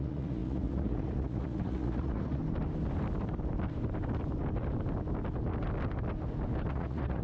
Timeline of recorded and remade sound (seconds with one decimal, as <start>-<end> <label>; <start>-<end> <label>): 0.0-2.4 remade; 2.4-6.7 recorded; 6.7-7.2 remade